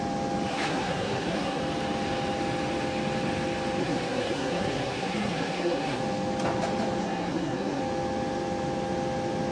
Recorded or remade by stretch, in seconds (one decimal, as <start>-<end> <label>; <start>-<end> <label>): 0.0-0.5 recorded; 0.5-1.6 remade; 1.6-3.8 recorded; 3.8-6.0 remade; 6.0-7.0 recorded; 7.0-7.8 remade; 7.8-9.5 recorded